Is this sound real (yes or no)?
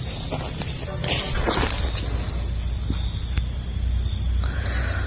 yes